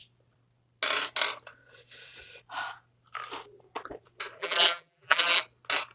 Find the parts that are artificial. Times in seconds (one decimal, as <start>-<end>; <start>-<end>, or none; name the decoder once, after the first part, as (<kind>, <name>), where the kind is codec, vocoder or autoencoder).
4.4-5.4 (vocoder, BigVGAN v2)